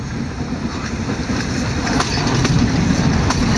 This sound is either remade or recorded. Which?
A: recorded